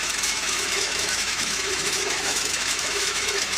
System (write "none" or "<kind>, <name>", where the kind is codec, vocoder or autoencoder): autoencoder, DAC-VAE